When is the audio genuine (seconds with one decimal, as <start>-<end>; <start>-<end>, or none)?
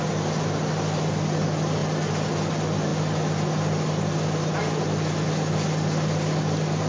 0.0-6.9